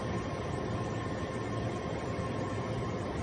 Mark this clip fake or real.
real